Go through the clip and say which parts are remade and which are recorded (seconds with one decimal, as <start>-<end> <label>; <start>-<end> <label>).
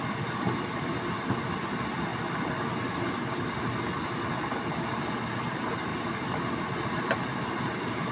0.0-8.1 recorded